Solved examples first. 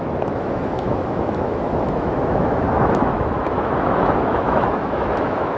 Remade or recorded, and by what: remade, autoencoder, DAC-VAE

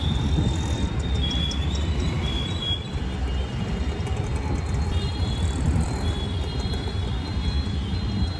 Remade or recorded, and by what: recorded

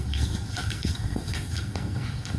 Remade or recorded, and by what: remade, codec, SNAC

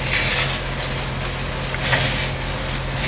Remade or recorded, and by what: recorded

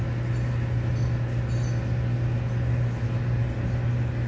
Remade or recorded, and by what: recorded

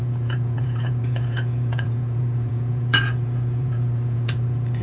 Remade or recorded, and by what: remade, vocoder, Vocos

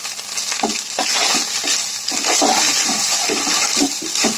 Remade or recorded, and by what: recorded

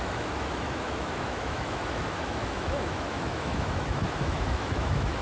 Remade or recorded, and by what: remade, autoencoder, DAC-VAE